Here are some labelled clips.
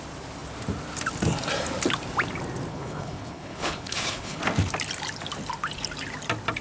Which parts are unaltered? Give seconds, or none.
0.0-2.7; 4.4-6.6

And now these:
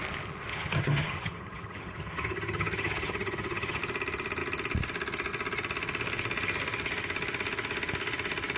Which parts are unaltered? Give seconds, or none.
0.0-0.5; 3.8-8.6

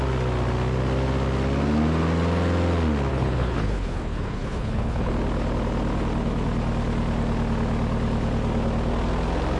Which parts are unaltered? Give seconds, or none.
0.0-3.1; 5.1-9.6

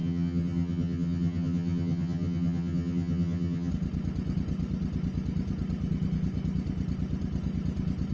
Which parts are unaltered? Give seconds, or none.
3.7-8.1

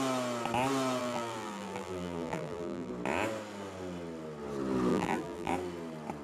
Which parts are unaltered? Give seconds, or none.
0.0-1.0; 2.9-4.9; 5.5-6.2